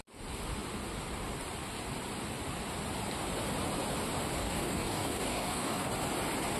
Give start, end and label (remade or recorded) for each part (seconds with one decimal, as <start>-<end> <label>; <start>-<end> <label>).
0.0-4.4 recorded; 4.4-5.9 remade; 5.9-6.6 recorded